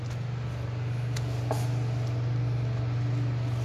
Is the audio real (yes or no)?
yes